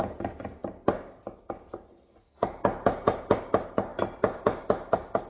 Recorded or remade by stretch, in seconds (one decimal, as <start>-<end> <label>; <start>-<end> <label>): 0.0-0.6 recorded; 0.6-1.4 remade; 1.4-3.9 recorded; 3.9-5.3 remade